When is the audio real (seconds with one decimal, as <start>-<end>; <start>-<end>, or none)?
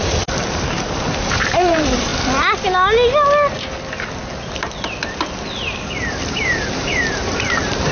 2.1-6.1